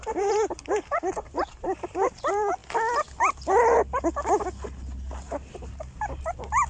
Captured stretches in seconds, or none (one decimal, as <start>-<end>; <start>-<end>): 2.6-5.2